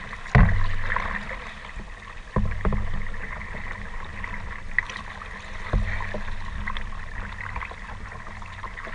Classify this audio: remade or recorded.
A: recorded